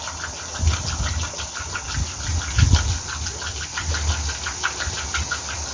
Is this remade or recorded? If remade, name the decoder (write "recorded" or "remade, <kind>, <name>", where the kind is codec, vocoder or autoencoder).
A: recorded